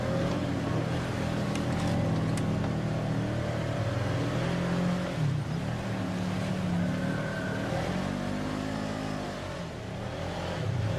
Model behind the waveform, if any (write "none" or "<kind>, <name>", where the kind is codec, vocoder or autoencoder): none